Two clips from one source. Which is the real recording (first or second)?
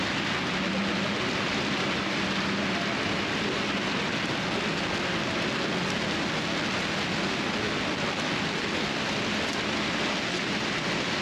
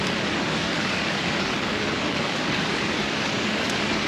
first